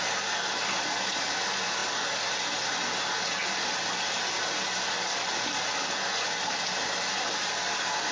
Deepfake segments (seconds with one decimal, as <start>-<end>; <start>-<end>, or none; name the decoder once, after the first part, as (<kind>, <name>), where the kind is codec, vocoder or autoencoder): none